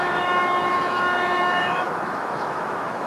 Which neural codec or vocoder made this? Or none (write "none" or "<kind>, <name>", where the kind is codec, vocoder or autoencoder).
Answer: autoencoder, DAC-VAE